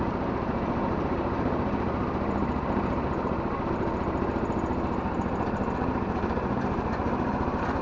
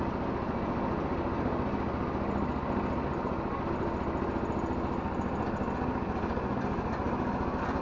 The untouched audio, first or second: second